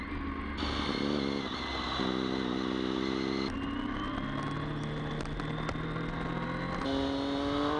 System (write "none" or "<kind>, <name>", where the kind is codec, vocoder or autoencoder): none